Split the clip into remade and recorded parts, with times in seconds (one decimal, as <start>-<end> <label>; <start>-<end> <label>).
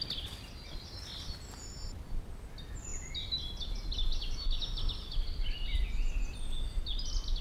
0.0-7.4 recorded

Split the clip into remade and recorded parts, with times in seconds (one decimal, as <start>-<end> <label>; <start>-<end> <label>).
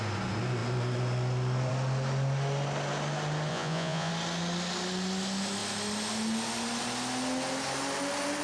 0.0-3.5 recorded; 3.5-4.1 remade; 4.1-8.4 recorded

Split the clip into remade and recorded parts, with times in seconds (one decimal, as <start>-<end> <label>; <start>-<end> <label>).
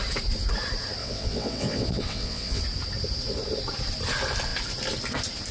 0.0-1.0 recorded; 1.0-2.6 remade; 2.6-5.5 recorded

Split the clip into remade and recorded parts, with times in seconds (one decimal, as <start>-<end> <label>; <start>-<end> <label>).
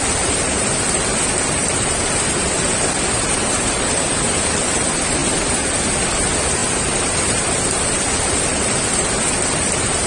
0.0-10.1 recorded